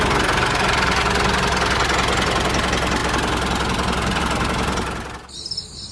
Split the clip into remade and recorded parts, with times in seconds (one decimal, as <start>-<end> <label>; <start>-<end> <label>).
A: 0.0-5.9 recorded